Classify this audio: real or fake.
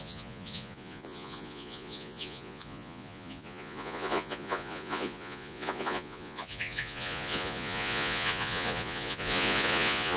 fake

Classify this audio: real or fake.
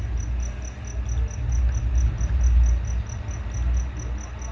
real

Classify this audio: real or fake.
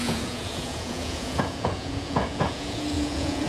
fake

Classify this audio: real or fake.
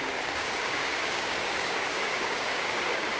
fake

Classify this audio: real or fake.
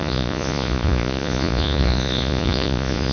fake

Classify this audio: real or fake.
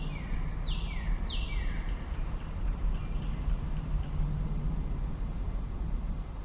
real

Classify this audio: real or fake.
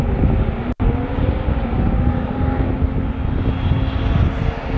real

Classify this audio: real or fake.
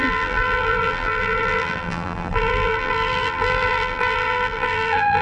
fake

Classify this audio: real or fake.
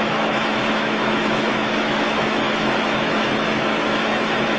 fake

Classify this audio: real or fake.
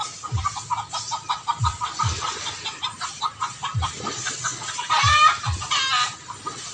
real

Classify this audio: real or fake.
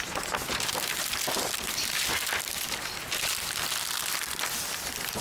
real